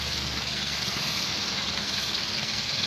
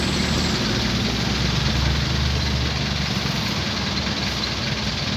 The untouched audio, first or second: second